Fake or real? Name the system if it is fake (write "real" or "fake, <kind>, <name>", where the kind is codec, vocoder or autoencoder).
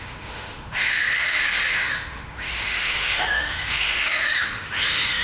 fake, autoencoder, DAC-VAE